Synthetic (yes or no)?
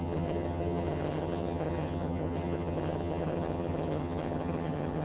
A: yes